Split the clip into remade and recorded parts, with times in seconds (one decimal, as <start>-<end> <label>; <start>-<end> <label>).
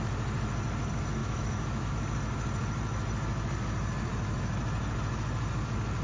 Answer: 0.0-1.2 recorded; 1.2-1.9 remade; 1.9-6.0 recorded